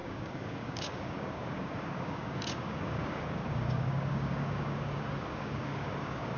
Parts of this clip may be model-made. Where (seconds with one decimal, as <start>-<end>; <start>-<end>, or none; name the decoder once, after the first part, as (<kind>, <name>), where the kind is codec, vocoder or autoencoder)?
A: 0.0-6.4 (codec, DAC)